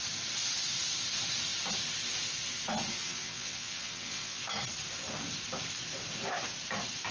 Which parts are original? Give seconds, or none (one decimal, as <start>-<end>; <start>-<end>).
0.0-2.9; 4.4-7.1